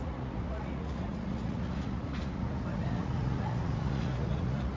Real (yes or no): no